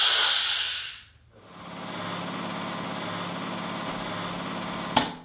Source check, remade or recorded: recorded